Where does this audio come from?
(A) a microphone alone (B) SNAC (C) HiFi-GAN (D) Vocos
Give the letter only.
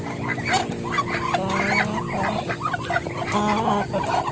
A